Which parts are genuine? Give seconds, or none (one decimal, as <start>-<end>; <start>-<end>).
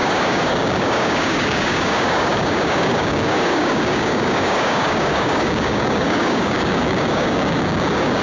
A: none